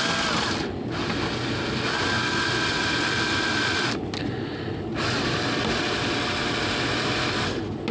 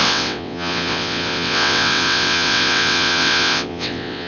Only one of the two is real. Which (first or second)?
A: first